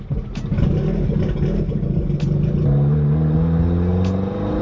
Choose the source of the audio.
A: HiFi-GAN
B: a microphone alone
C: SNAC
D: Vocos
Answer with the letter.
B